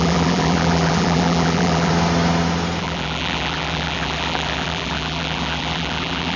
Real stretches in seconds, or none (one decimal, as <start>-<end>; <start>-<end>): 1.9-2.8